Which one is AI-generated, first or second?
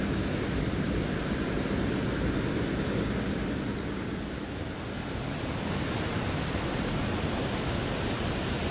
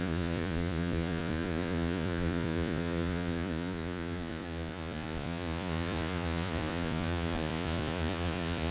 second